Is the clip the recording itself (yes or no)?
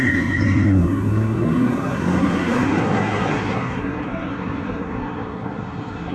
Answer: no